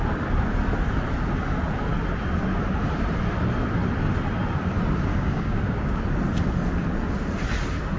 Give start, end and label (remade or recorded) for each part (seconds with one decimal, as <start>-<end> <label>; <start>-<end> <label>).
0.0-5.1 recorded; 5.1-6.0 remade; 6.0-8.0 recorded